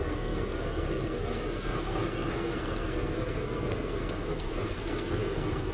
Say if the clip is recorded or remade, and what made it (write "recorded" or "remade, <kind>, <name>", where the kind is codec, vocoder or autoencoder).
remade, codec, SNAC